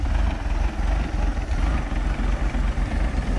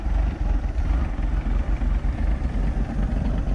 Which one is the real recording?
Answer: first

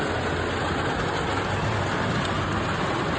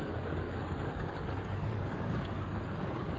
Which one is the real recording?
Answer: first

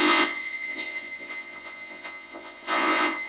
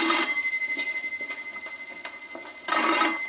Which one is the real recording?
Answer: second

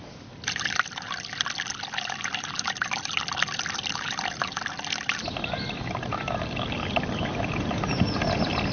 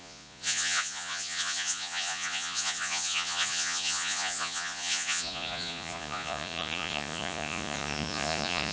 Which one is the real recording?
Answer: first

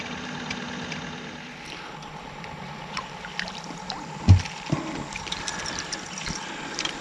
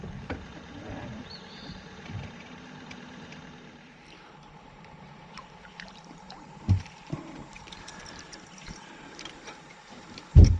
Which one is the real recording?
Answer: first